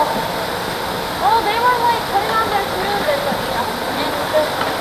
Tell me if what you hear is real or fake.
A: real